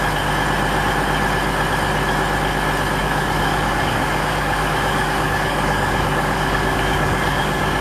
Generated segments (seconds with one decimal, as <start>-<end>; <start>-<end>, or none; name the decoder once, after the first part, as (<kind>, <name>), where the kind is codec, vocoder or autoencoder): 3.0-7.8 (codec, DAC)